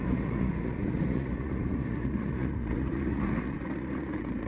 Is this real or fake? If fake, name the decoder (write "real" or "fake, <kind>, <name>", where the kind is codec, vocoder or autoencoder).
fake, vocoder, Vocos